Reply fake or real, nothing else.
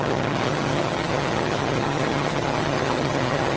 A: fake